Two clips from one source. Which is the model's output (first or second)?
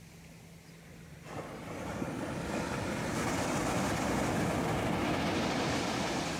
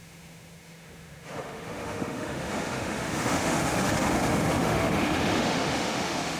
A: second